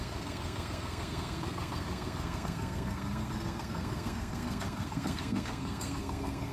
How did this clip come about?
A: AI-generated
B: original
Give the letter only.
A